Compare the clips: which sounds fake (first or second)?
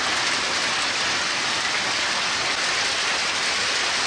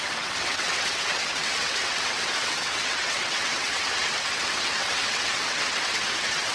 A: second